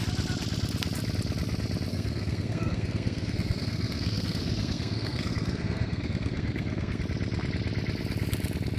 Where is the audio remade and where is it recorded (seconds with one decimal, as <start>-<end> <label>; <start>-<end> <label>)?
0.0-1.9 recorded; 1.9-7.0 remade; 7.0-8.8 recorded